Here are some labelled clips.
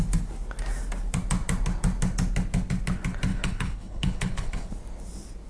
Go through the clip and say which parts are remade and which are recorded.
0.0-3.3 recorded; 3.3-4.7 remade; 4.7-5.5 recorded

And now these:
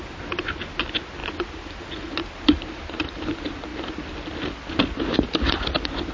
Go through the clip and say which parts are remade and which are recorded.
0.0-6.1 recorded

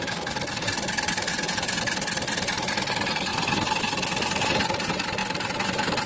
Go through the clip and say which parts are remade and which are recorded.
0.0-1.3 recorded; 1.3-1.8 remade; 1.8-6.1 recorded

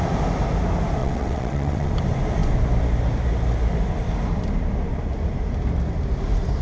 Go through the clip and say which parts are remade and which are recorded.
0.0-1.0 recorded; 1.0-1.9 remade; 1.9-6.6 recorded